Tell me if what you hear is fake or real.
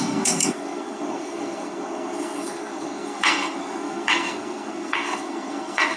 fake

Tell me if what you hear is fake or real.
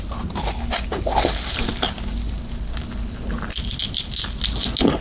real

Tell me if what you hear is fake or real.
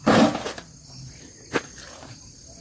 real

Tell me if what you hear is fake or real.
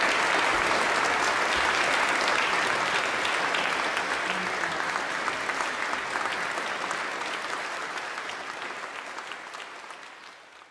real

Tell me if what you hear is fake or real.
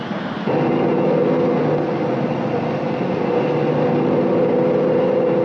real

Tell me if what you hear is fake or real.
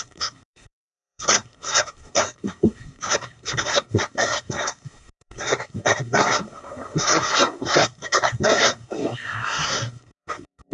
fake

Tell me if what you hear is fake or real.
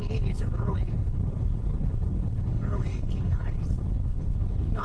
fake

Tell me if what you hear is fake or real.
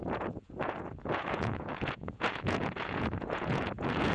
fake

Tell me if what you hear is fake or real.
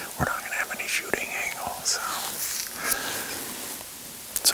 real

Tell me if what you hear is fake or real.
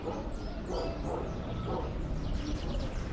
real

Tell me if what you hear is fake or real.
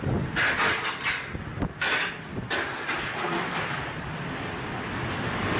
real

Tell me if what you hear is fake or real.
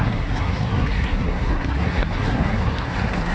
fake